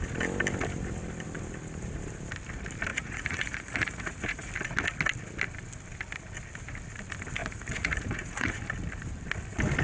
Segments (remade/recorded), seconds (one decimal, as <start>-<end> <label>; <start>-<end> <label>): 0.0-2.9 recorded; 2.9-4.5 remade; 4.5-7.4 recorded; 7.4-8.6 remade; 8.6-9.8 recorded